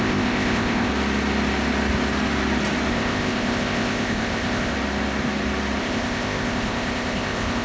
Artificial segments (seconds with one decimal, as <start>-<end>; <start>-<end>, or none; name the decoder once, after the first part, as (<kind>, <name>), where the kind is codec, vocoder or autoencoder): 0.0-0.9 (codec, ZipCodec); 2.9-4.7; 5.8-7.6